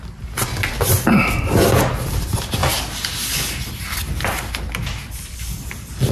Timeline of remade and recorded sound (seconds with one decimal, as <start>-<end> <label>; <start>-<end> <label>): 0.0-6.1 recorded